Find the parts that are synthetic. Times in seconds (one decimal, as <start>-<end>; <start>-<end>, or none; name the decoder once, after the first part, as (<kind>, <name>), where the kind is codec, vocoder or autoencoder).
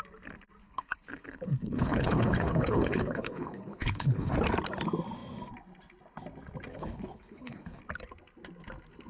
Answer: 0.6-4.3 (codec, HILCodec); 6.7-7.8